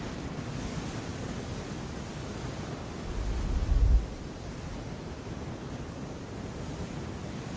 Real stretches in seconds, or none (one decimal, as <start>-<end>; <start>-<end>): 0.0-7.6